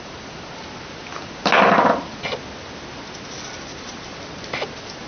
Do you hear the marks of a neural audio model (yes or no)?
no